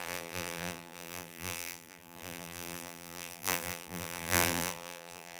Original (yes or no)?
no